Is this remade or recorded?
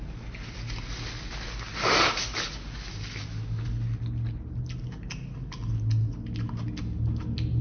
recorded